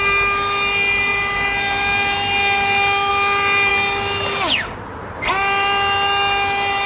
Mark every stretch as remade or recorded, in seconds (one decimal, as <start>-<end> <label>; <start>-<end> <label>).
0.0-6.9 recorded